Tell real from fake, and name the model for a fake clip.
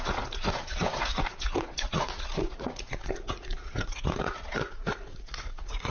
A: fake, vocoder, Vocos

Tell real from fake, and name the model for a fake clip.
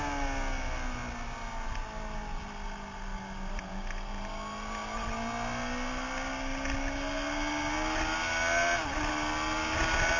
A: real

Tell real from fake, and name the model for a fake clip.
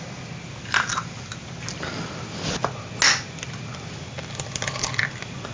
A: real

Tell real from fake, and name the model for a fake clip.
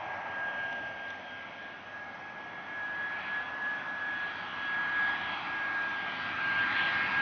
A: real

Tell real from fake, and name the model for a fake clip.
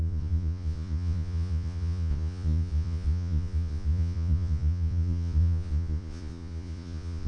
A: fake, vocoder, Vocos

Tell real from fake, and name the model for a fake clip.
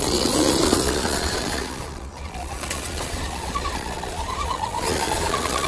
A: fake, vocoder, Vocos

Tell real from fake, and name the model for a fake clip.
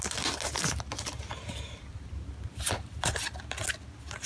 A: real